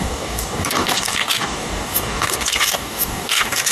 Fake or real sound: fake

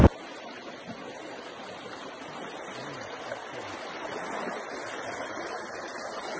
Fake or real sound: real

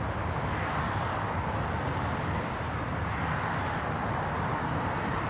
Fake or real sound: real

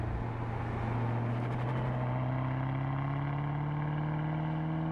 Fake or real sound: real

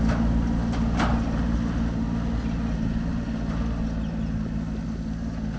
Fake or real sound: real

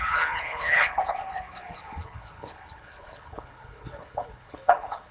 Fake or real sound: fake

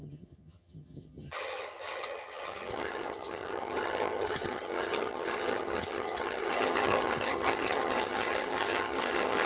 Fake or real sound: fake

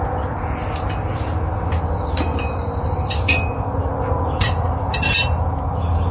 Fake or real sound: real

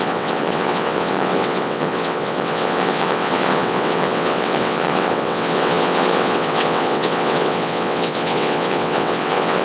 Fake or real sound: fake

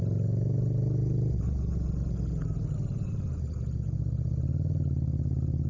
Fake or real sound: real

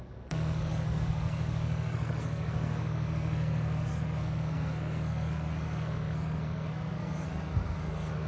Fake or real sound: fake